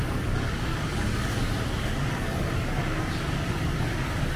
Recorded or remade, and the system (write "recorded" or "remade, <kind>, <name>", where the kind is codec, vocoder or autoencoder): remade, codec, DAC